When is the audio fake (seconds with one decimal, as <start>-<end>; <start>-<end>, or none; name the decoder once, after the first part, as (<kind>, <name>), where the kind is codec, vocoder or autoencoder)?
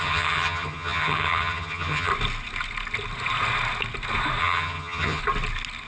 0.0-2.1 (vocoder, HiFi-GAN); 4.4-5.2